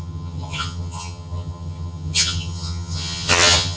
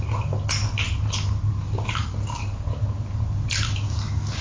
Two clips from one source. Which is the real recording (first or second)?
second